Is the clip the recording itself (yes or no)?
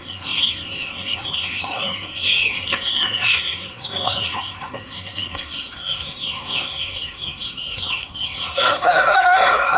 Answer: no